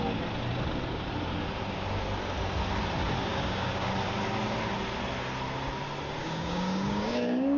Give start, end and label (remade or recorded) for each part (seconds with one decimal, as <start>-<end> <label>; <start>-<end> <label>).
0.0-3.3 recorded; 3.3-3.9 remade; 3.9-6.2 recorded; 6.2-7.6 remade